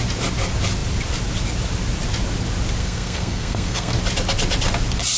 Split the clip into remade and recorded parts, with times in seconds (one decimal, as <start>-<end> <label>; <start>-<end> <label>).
0.0-2.8 recorded; 2.8-4.0 remade; 4.0-5.2 recorded